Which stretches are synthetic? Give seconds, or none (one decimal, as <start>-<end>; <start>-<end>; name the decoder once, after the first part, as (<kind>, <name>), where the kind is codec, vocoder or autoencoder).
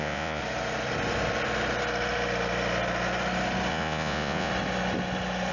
0.0-0.4 (vocoder, Vocos); 3.7-4.5